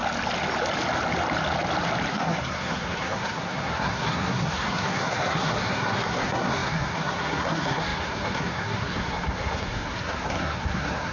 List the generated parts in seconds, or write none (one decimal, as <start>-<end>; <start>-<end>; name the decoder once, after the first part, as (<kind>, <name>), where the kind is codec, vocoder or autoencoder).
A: 2.1-11.1 (codec, SNAC)